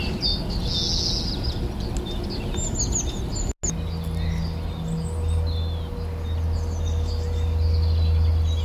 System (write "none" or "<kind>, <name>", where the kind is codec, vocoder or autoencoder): none